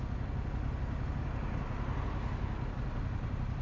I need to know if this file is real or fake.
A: real